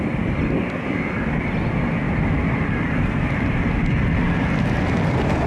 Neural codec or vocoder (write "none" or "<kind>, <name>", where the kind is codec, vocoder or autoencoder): none